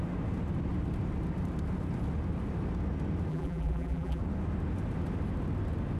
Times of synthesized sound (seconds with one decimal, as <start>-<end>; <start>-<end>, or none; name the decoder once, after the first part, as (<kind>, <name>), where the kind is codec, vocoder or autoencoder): 3.3-4.2 (vocoder, BigVGAN v2)